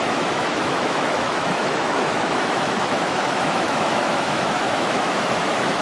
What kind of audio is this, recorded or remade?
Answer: remade